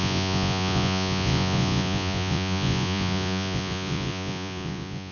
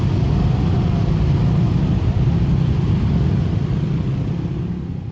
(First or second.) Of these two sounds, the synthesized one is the first